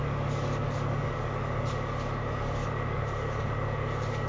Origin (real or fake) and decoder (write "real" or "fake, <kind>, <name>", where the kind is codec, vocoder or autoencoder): fake, codec, DAC